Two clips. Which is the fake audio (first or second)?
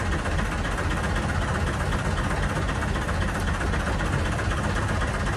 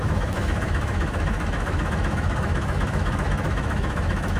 second